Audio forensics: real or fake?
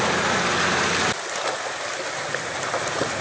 real